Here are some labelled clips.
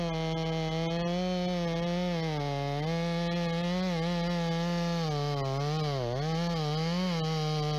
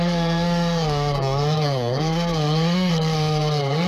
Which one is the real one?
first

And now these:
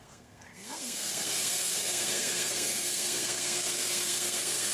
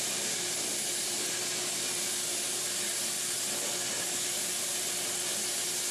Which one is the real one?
second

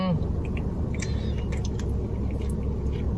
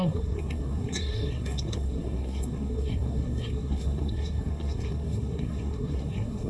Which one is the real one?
first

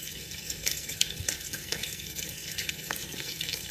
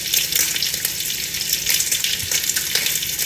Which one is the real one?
second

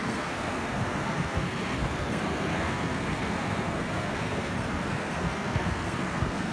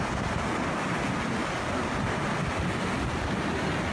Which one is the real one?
second